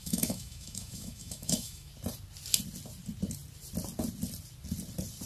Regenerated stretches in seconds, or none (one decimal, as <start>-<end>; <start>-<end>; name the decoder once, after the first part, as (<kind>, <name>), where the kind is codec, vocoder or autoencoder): 0.0-1.9 (autoencoder, DAC-VAE)